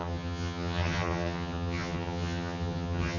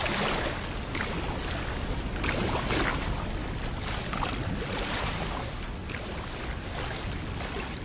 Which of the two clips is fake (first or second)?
first